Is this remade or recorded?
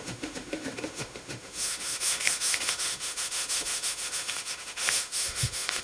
remade